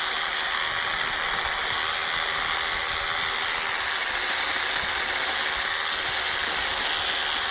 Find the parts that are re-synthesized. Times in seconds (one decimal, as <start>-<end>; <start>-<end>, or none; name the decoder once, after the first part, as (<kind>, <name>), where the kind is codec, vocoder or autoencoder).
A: none